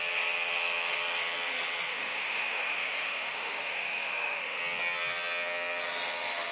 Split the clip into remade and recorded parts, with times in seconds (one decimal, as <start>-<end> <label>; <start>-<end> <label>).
0.0-1.9 recorded; 1.9-4.6 remade; 4.6-6.5 recorded